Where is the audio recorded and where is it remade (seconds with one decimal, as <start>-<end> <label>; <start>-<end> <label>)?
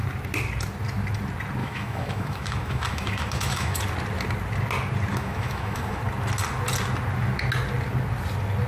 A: 0.0-1.6 recorded; 1.6-3.8 remade; 3.8-5.1 recorded; 5.1-6.0 remade; 6.0-8.7 recorded